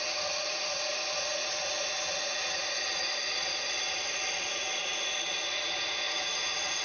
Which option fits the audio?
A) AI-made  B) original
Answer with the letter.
B